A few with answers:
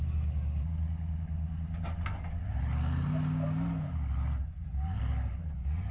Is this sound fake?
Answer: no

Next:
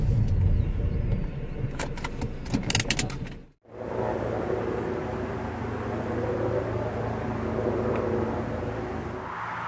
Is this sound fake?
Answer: no